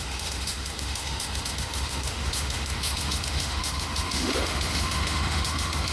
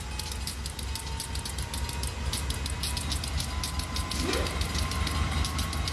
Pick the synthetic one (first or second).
first